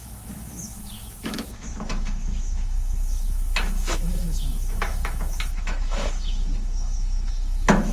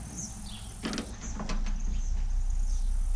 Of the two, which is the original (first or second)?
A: second